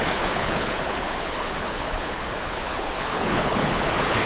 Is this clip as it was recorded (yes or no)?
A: no